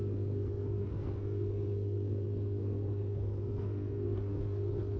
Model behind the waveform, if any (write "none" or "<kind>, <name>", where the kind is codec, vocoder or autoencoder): codec, SNAC